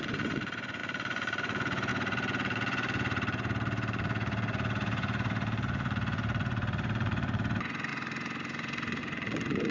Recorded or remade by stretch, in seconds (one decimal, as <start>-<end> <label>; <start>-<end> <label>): 0.0-9.7 remade